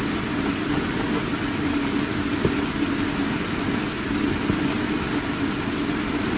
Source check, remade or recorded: recorded